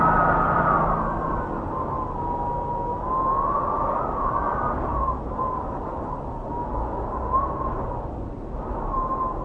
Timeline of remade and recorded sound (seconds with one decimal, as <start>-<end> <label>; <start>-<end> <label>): 0.0-9.4 recorded